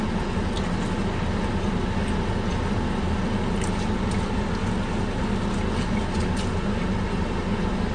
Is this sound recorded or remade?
recorded